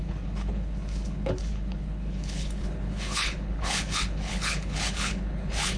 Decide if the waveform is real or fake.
fake